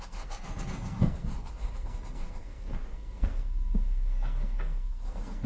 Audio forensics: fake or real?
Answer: fake